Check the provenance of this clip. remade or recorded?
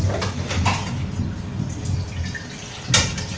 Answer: recorded